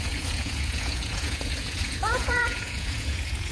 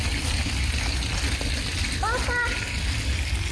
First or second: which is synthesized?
first